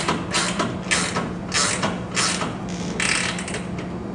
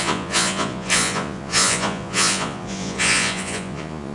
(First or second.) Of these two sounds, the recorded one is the first